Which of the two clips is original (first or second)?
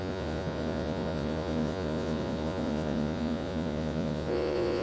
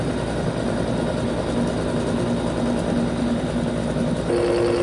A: second